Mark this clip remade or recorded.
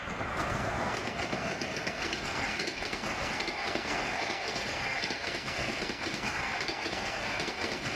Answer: remade